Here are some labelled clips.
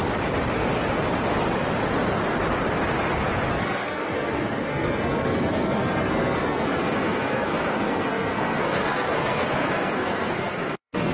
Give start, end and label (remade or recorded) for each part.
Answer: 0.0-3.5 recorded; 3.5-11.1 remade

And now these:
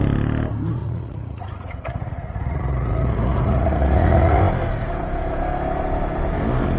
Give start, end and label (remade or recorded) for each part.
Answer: 0.0-0.8 recorded; 0.8-4.4 remade; 4.4-6.8 recorded

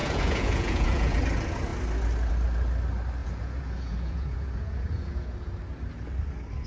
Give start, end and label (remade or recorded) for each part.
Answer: 0.0-1.2 remade; 1.2-3.2 recorded; 3.2-5.6 remade; 5.6-6.7 recorded

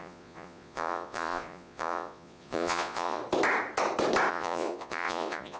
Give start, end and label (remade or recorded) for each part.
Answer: 0.0-3.2 remade; 3.2-4.3 recorded; 4.3-5.6 remade

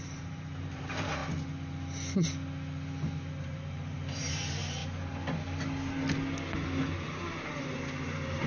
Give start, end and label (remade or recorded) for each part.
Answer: 0.0-1.2 remade; 1.2-3.4 recorded; 3.4-4.8 remade; 4.8-7.6 recorded; 7.6-8.5 remade